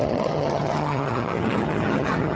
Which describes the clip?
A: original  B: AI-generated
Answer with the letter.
B